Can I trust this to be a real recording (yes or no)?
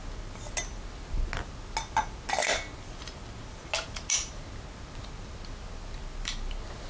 yes